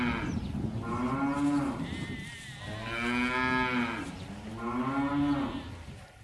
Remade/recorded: recorded